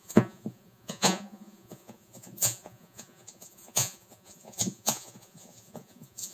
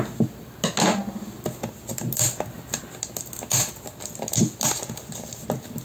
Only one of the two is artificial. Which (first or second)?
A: first